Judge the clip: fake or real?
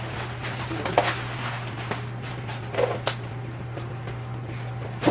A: real